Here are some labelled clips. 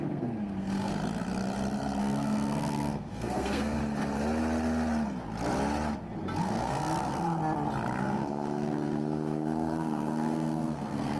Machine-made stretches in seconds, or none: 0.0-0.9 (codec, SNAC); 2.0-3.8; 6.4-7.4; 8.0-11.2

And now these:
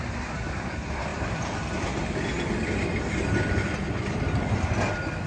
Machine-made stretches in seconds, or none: none

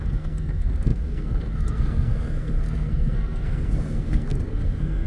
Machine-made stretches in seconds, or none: 0.0-5.1 (codec, SNAC)

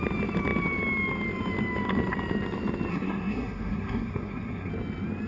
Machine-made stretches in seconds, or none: 2.9-4.7 (codec, SNAC)

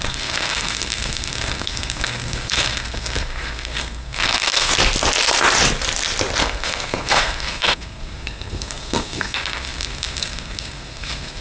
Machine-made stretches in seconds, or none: 0.0-4.7 (codec, SNAC); 6.4-11.4

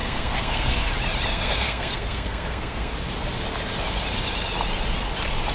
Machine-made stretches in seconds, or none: 0.0-0.9 (codec, SNAC); 1.3-2.9

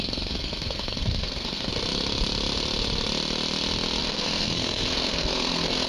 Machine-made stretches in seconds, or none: 0.0-1.7 (codec, SNAC); 4.0-5.9